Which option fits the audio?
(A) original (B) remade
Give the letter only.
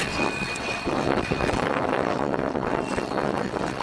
B